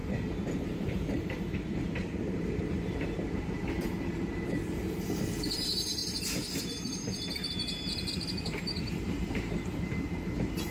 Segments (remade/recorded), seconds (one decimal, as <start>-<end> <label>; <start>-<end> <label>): 0.0-0.6 recorded; 0.6-6.0 remade; 6.0-6.6 recorded; 6.6-10.7 remade